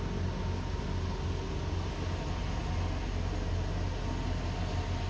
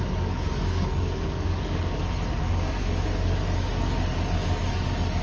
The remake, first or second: second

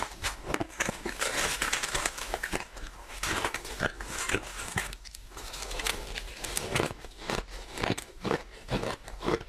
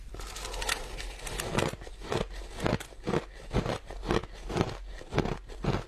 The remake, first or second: first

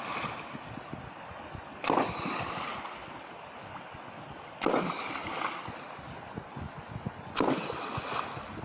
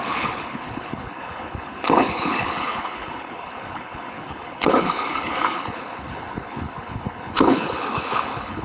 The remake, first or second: second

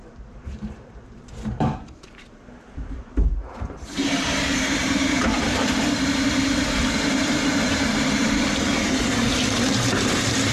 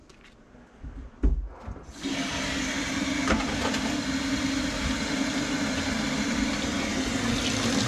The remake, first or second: first